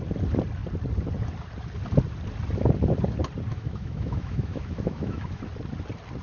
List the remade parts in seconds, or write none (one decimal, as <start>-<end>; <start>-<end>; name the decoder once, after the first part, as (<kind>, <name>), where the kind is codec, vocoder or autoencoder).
3.5-5.4 (autoencoder, DAC-VAE)